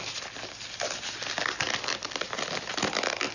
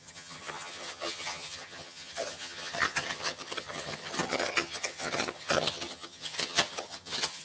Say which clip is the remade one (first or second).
second